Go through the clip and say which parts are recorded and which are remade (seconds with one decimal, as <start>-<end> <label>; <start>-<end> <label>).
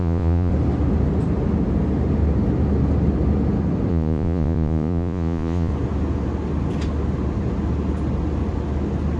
0.0-0.5 remade; 0.5-3.9 recorded; 3.9-5.7 remade; 5.7-9.2 recorded